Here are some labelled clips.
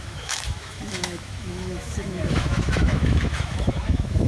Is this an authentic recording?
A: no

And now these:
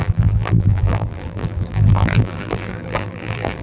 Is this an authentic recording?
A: no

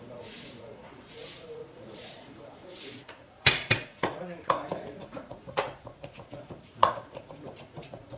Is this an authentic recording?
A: no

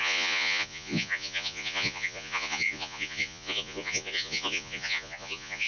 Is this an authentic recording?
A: no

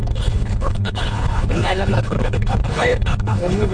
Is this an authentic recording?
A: no